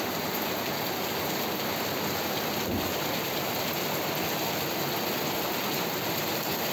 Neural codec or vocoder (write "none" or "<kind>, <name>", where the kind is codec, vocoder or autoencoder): none